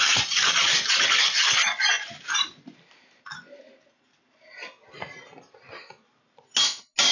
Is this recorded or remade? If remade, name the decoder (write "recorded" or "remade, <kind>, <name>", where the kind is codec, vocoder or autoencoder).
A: recorded